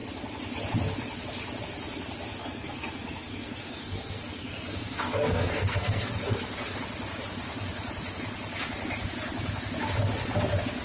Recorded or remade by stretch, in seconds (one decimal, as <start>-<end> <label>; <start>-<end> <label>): 0.0-2.4 recorded; 2.4-6.1 remade; 6.1-10.8 recorded